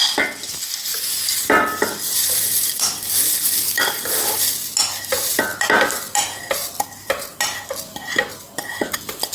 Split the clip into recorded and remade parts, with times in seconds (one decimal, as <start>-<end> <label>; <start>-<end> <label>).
0.0-0.9 recorded; 0.9-4.5 remade; 4.5-9.3 recorded